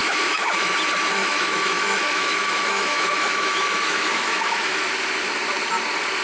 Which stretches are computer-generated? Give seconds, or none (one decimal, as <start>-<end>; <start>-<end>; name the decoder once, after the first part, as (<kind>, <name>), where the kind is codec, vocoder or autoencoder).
0.0-0.7 (autoencoder, DAC-VAE); 1.2-4.9